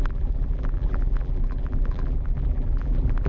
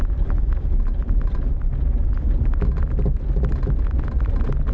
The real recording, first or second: second